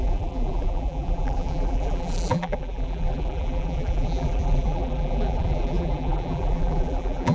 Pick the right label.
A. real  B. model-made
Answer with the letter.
B